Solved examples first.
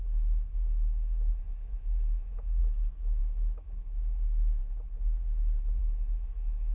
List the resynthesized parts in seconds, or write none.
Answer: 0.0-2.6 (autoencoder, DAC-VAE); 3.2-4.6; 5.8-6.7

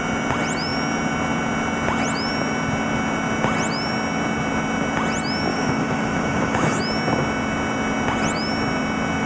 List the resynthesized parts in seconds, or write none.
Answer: 5.5-6.8 (autoencoder, DAC-VAE)

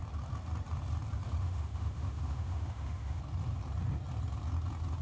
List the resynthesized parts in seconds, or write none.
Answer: 1.4-3.2 (autoencoder, DAC-VAE)

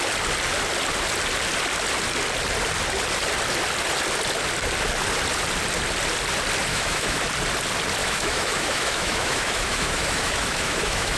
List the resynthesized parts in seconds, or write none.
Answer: 6.7-7.2 (autoencoder, DAC-VAE); 8.0-11.2

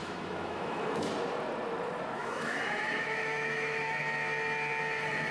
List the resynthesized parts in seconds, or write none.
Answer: 0.0-1.1 (autoencoder, DAC-VAE); 2.2-4.0

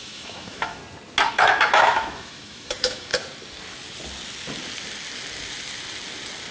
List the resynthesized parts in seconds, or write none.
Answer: 0.0-0.8 (autoencoder, DAC-VAE); 1.3-3.1